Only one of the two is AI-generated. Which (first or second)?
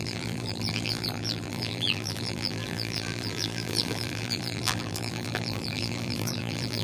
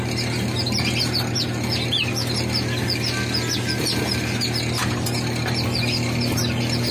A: first